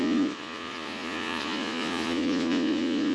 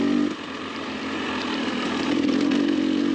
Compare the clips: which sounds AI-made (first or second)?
first